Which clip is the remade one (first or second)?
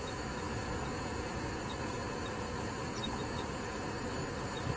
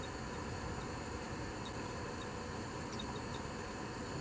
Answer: first